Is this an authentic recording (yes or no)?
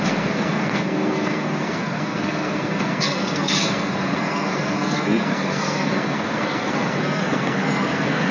no